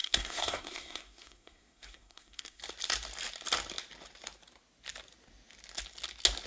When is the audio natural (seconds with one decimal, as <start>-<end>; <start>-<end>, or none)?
2.6-6.5